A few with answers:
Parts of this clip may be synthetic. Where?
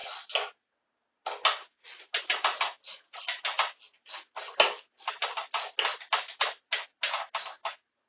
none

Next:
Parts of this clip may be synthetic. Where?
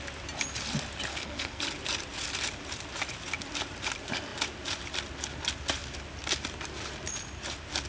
1.1-1.6 (codec, SNAC)